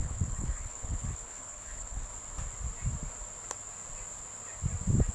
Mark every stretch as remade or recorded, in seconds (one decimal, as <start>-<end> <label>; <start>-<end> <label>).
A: 0.0-2.1 remade; 2.1-5.1 recorded